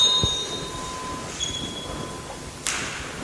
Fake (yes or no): no